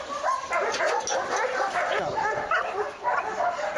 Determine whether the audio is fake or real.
real